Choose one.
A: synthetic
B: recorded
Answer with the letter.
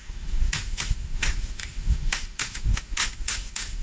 A